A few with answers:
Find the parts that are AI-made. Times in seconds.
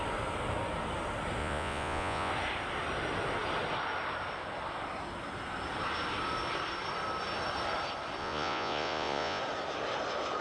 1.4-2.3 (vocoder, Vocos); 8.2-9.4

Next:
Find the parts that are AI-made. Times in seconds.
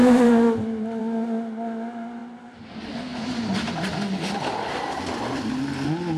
0.0-1.0 (vocoder, BigVGAN v2); 2.2-2.7; 3.1-4.3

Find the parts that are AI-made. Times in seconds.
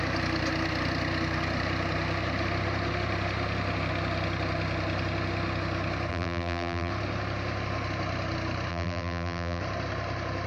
6.1-6.9 (vocoder, BigVGAN v2); 8.7-9.6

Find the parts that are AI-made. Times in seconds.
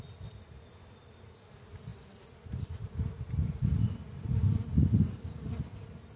none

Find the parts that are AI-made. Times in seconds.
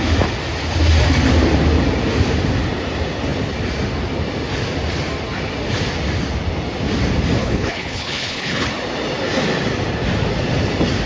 7.4-8.7 (codec, HILCodec)